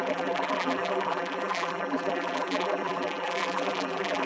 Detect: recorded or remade remade